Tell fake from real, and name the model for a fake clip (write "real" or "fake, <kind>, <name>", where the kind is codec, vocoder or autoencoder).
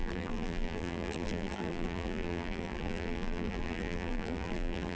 fake, vocoder, BigVGAN v2